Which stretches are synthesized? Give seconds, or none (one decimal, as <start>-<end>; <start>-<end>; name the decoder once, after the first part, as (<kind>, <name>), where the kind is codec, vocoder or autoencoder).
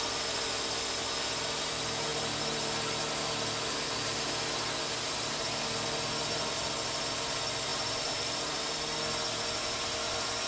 7.7-8.4 (vocoder, BigVGAN v2)